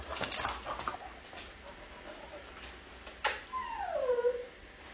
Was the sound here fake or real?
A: real